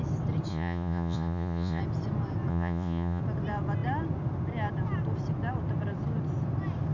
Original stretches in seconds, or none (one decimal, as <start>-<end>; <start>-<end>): 0.0-0.5; 1.8-2.5; 3.2-6.9